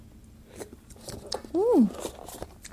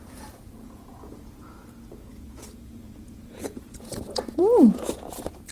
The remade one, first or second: second